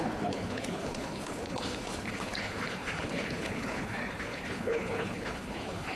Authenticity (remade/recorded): remade